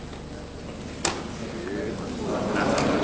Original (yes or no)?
yes